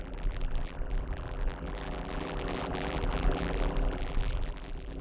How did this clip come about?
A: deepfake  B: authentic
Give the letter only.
A